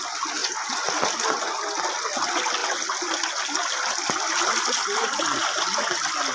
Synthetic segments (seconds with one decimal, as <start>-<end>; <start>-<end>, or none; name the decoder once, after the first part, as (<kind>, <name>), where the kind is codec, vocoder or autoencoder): 0.0-0.4 (vocoder, BigVGAN v2); 1.8-2.6; 4.1-6.3